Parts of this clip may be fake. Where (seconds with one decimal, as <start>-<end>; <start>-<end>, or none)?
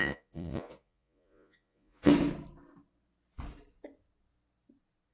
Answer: 0.0-2.1